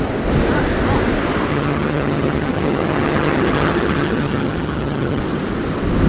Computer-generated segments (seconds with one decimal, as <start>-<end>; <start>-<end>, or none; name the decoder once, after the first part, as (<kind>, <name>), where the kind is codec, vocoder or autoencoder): 1.5-5.2 (vocoder, HiFi-GAN)